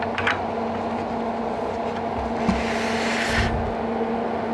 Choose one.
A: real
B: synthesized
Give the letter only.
A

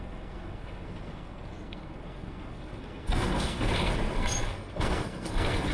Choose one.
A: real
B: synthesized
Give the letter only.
B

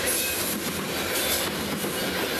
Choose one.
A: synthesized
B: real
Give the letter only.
B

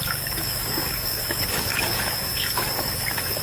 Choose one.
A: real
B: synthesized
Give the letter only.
B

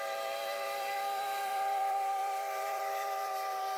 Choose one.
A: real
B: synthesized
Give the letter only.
B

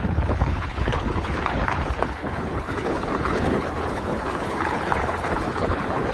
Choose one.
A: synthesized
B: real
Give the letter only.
A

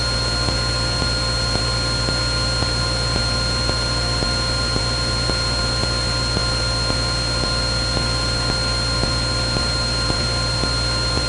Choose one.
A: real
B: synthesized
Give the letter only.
A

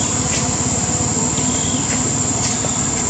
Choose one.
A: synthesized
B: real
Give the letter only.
B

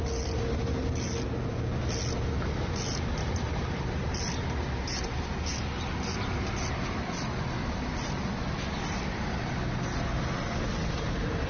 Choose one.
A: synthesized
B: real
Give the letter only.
B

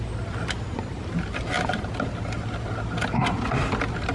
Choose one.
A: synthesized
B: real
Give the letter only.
B